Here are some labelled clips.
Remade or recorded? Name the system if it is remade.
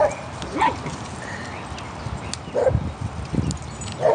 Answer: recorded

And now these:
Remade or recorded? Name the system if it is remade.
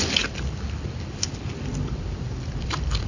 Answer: remade, vocoder, BigVGAN v2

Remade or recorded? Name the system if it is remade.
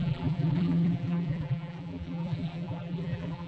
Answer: remade, vocoder, BigVGAN v2